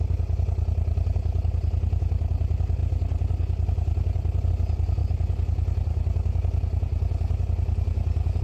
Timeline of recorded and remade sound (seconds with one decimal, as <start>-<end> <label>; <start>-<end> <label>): 0.0-8.4 recorded